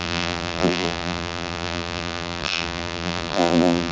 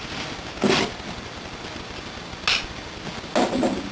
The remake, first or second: first